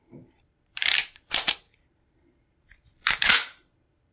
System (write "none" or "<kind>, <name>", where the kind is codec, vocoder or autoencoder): vocoder, BigVGAN v2